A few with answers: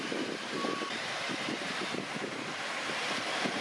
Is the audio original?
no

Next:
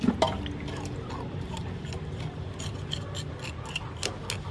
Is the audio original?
yes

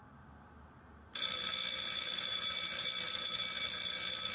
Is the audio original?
yes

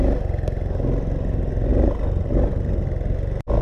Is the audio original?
yes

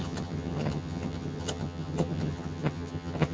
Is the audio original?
no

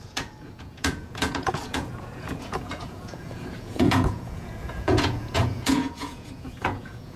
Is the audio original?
no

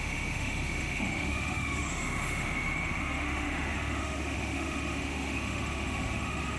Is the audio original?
no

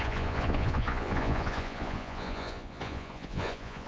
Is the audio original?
no